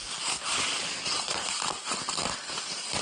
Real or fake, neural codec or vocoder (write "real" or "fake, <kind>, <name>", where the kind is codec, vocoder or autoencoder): real